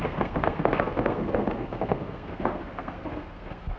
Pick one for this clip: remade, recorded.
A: remade